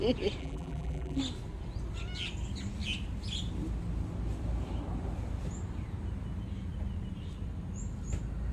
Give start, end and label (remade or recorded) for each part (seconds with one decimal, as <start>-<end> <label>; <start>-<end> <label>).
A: 0.0-0.4 recorded; 0.4-1.2 remade; 1.2-8.5 recorded